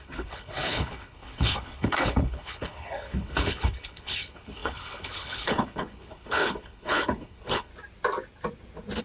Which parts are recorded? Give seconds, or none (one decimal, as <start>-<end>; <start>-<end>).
7.7-9.0